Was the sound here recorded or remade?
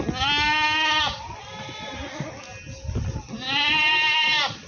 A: recorded